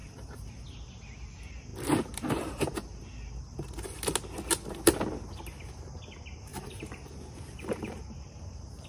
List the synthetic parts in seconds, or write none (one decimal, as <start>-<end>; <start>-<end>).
0.0-0.6; 6.5-8.9